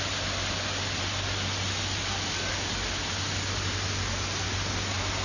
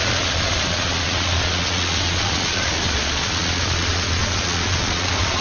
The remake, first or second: second